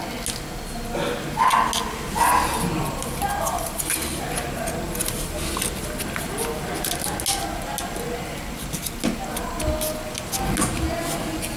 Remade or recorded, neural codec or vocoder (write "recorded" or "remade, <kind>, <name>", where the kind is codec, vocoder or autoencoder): recorded